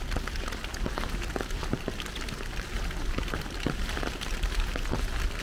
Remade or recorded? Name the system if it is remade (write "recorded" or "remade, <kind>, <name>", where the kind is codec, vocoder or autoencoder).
recorded